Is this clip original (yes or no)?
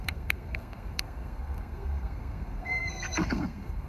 no